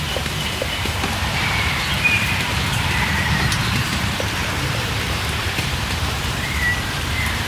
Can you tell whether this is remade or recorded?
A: remade